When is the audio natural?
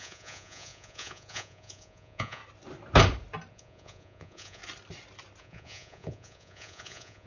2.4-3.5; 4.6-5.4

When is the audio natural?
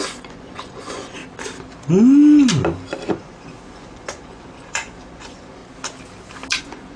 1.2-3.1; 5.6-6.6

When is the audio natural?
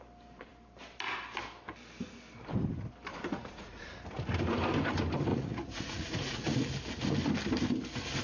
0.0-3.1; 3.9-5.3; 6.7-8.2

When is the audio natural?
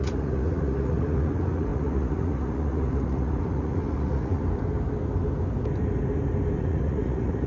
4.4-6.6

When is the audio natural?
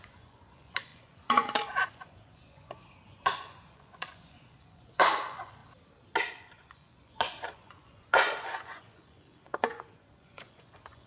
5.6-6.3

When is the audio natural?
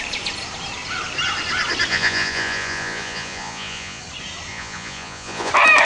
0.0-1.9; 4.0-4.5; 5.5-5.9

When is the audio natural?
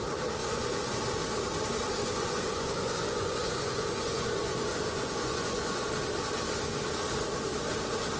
0.0-0.4; 0.9-2.0; 5.9-8.2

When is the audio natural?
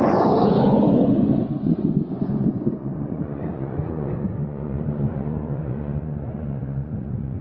none